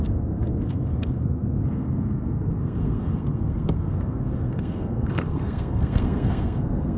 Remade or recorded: remade